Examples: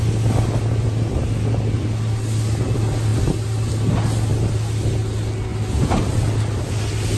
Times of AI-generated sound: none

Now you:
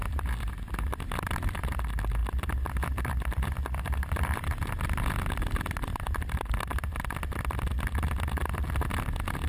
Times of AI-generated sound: 0.0-1.7 (vocoder, BigVGAN v2); 2.2-7.2

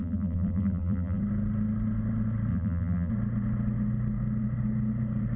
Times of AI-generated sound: 0.0-1.2 (vocoder, BigVGAN v2); 2.5-3.1

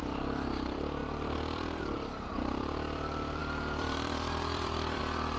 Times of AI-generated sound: 0.0-5.4 (vocoder, BigVGAN v2)